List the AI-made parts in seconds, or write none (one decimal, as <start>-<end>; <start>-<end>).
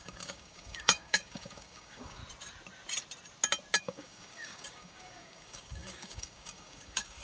0.0-2.2; 3.8-7.2